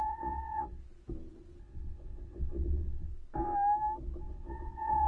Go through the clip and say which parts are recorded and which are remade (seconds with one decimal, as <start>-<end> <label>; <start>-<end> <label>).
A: 0.0-0.8 remade; 0.8-1.6 recorded; 1.6-3.1 remade; 3.1-4.2 recorded; 4.2-5.1 remade